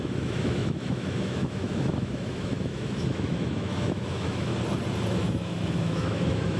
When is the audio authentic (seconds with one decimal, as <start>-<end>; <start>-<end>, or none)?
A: 4.5-5.2